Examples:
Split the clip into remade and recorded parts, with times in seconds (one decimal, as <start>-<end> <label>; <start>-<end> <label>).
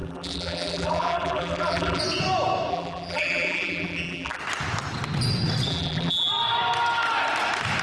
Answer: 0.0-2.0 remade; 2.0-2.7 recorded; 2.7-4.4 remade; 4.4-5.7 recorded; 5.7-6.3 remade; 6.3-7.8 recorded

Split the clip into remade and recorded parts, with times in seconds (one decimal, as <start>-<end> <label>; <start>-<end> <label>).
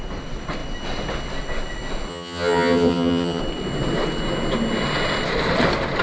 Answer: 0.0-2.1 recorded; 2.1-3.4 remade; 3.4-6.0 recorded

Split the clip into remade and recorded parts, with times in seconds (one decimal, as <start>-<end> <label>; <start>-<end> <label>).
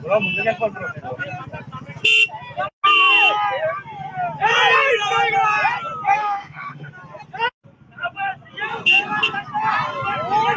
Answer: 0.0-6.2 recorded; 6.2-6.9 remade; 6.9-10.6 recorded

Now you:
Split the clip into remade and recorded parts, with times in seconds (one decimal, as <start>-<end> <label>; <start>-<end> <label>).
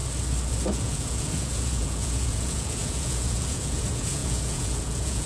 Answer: 0.0-0.5 recorded; 0.5-5.3 remade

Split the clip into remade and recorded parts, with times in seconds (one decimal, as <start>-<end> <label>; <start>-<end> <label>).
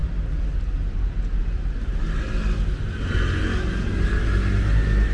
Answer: 0.0-5.1 recorded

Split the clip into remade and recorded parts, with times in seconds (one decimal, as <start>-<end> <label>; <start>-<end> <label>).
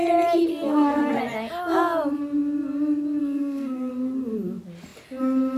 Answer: 0.0-0.5 recorded; 0.5-1.2 remade; 1.2-3.2 recorded; 3.2-3.9 remade; 3.9-5.6 recorded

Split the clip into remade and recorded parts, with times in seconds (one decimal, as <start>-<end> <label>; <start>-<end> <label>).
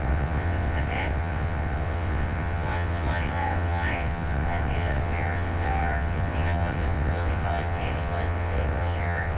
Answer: 0.0-9.4 remade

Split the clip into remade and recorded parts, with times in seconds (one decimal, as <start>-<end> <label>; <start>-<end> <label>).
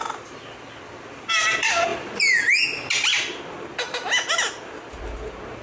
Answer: 0.0-5.6 recorded